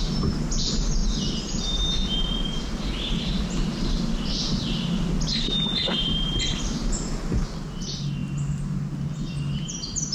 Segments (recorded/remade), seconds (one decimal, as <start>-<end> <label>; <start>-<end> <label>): 0.0-10.1 recorded